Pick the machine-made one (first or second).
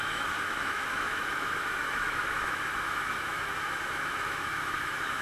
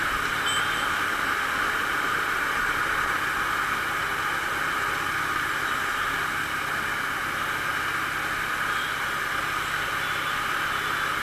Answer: first